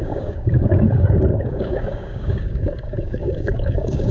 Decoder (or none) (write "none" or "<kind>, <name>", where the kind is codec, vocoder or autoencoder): codec, DAC